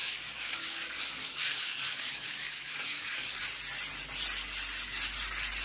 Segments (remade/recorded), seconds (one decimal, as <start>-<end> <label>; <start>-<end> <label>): 0.0-3.4 remade; 3.4-5.6 recorded